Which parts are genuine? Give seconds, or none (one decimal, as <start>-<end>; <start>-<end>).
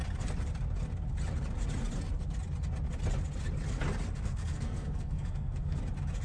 0.0-4.2; 5.8-6.2